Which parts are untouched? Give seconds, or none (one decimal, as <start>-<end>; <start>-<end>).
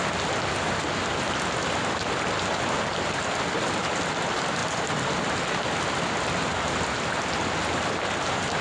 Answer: 0.0-8.6